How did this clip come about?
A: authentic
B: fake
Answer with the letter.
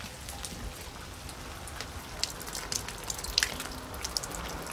A